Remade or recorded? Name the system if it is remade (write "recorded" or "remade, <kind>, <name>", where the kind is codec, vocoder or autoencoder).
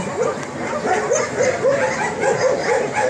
recorded